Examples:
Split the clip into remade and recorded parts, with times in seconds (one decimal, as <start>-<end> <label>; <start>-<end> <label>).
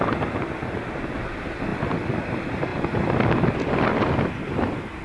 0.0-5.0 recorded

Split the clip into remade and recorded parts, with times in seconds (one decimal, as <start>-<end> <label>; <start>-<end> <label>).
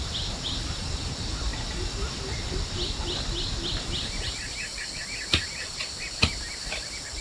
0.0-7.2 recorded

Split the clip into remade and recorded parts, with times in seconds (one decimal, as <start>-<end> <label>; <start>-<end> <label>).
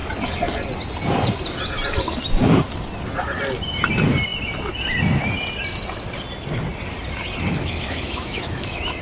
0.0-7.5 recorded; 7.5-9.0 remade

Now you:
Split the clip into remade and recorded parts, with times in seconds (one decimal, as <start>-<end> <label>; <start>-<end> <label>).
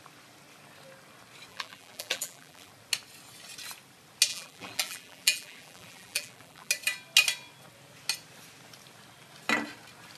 0.0-1.5 recorded; 1.5-2.7 remade; 2.7-4.3 recorded; 4.3-6.7 remade; 6.7-10.2 recorded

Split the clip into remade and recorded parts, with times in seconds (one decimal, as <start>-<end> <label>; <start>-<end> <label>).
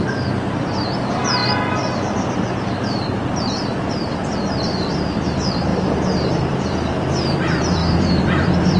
0.0-5.7 remade; 5.7-6.3 recorded; 6.3-8.8 remade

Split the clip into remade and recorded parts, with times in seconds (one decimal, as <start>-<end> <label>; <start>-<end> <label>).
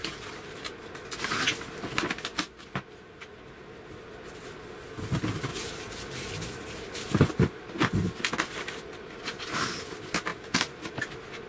0.0-0.6 remade; 0.6-5.5 recorded; 5.5-7.2 remade; 7.2-10.3 recorded; 10.3-11.0 remade; 11.0-11.5 recorded